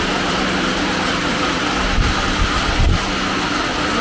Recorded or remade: recorded